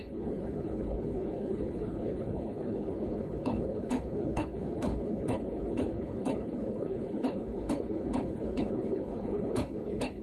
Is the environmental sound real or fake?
fake